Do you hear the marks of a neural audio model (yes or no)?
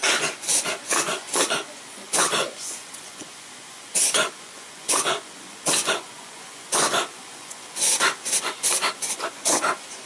yes